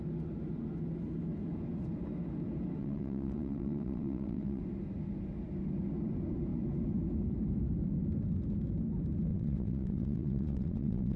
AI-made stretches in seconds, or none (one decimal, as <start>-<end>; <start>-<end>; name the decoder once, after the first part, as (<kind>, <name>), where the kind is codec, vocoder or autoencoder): 2.8-4.6 (vocoder, WaveNeXt); 9.3-11.2